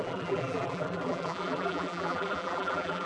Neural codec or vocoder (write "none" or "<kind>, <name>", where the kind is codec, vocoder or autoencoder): vocoder, BigVGAN v2